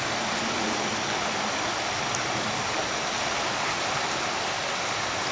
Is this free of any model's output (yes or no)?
yes